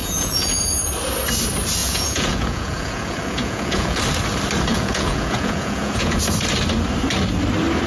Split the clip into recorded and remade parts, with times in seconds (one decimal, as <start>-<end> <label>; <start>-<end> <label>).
0.0-0.8 remade; 0.8-1.8 recorded; 1.8-4.0 remade; 4.0-4.7 recorded; 4.7-6.2 remade; 6.2-7.9 recorded